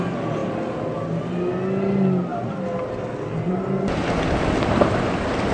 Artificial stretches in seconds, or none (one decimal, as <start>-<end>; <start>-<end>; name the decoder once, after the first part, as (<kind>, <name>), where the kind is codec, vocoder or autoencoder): none